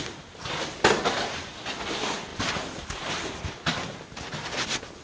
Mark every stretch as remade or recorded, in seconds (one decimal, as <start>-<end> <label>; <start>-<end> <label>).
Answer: 0.0-2.3 recorded; 2.3-3.1 remade; 3.1-5.0 recorded